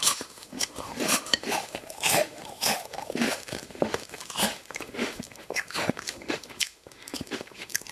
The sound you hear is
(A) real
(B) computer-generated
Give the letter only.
B